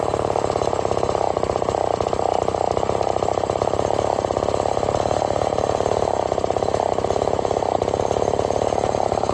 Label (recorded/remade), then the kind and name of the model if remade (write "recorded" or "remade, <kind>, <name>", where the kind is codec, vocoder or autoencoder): remade, vocoder, BigVGAN v2